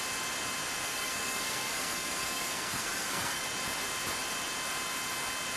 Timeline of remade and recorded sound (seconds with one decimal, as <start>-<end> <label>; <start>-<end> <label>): 0.0-0.8 recorded; 0.8-3.4 remade; 3.4-5.6 recorded